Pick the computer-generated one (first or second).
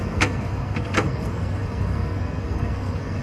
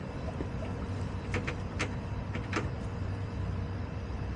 first